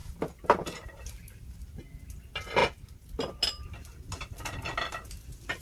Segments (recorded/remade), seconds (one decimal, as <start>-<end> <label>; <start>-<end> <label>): 0.0-5.6 recorded